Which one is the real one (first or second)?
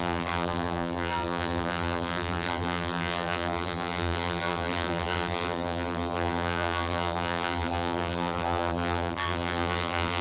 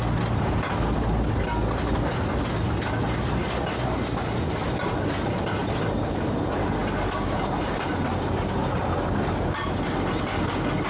second